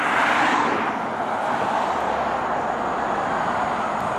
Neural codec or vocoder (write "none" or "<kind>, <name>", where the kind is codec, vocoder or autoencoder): none